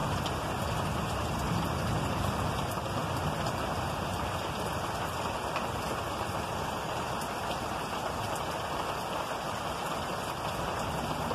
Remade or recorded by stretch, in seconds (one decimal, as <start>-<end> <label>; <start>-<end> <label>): 0.0-2.2 remade; 2.2-11.3 recorded